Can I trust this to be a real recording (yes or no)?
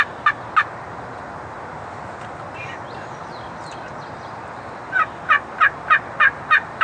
yes